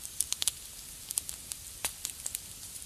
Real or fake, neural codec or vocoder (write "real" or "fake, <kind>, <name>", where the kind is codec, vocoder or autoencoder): real